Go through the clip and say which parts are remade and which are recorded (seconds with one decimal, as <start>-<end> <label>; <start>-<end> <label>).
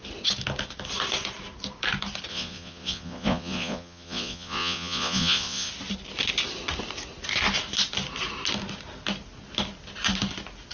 0.0-2.3 recorded; 2.3-5.7 remade; 5.7-10.7 recorded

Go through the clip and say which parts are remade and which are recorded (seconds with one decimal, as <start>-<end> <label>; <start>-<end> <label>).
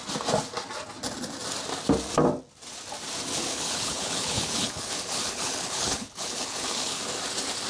0.0-3.5 recorded; 3.5-7.0 remade; 7.0-7.7 recorded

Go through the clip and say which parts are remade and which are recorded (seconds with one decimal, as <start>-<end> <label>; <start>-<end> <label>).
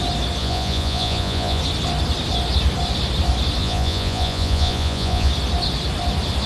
0.0-0.4 recorded; 0.4-1.6 remade; 1.6-3.6 recorded; 3.6-5.3 remade; 5.3-6.5 recorded